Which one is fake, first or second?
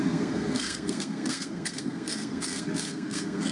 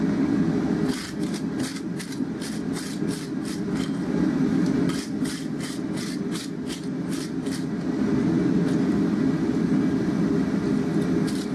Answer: first